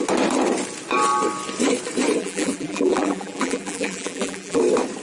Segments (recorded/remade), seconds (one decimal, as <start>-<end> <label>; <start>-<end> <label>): 0.0-2.2 recorded; 2.2-4.6 remade; 4.6-5.0 recorded